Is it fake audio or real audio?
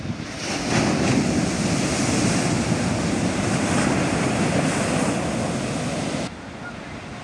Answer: real